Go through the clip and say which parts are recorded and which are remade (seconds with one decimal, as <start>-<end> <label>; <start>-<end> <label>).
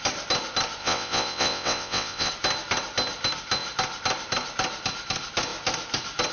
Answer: 0.0-0.8 recorded; 0.8-2.3 remade; 2.3-6.3 recorded